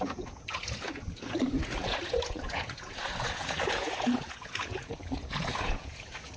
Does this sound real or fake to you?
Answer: fake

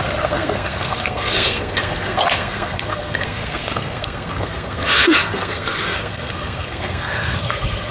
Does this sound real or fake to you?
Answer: fake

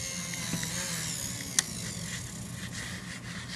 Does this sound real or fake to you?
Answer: real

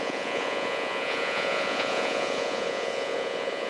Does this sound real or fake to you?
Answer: fake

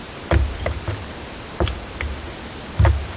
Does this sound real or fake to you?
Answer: real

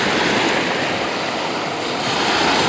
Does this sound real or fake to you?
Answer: real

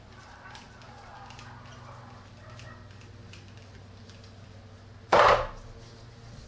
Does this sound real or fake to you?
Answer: real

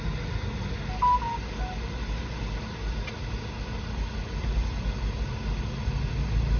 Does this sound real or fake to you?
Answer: real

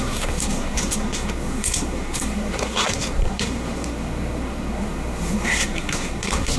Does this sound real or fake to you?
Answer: fake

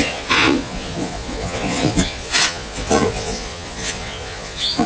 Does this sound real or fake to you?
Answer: fake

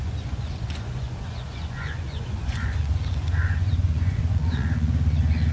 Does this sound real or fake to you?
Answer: fake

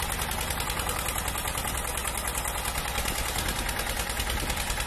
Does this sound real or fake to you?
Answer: real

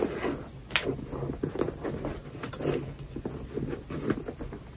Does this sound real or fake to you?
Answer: real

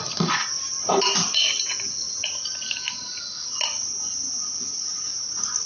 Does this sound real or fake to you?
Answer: real